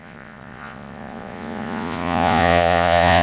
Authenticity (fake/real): fake